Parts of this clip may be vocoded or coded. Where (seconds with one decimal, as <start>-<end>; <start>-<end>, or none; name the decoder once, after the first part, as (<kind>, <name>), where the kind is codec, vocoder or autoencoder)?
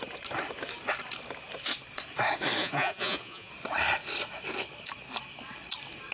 2.6-3.5 (vocoder, Vocos)